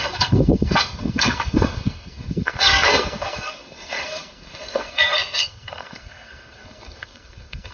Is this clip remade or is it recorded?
remade